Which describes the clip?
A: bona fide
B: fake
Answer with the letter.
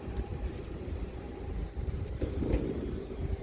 B